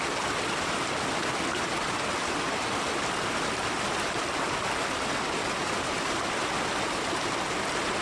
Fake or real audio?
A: real